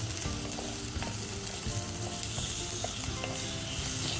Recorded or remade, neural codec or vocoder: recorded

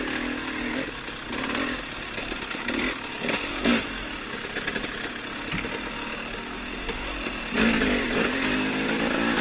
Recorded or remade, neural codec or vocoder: recorded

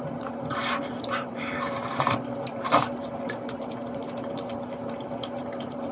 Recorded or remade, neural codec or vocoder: remade, vocoder, BigVGAN v2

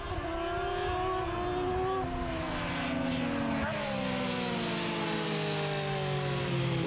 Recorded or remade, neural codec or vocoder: recorded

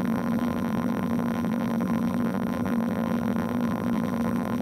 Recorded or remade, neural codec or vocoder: remade, vocoder, BigVGAN v2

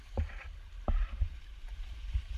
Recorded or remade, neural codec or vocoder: remade, vocoder, BigVGAN v2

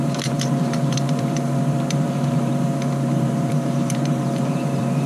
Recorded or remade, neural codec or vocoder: remade, vocoder, BigVGAN v2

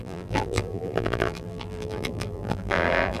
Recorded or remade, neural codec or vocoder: remade, vocoder, BigVGAN v2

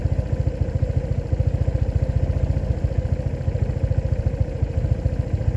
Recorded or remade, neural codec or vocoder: recorded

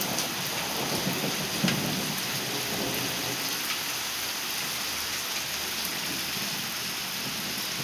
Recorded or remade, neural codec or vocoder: recorded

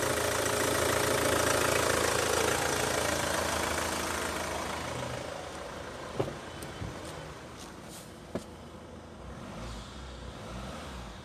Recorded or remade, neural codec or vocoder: recorded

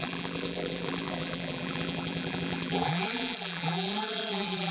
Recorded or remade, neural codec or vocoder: remade, vocoder, BigVGAN v2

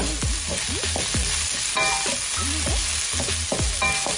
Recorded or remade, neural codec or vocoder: recorded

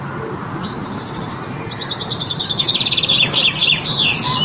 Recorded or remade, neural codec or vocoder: remade, vocoder, BigVGAN v2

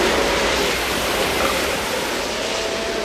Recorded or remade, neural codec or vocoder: recorded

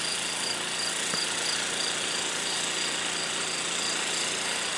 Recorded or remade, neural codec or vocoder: recorded